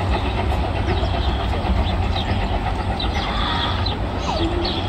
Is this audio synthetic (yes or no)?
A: no